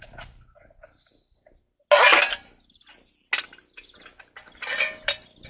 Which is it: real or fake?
real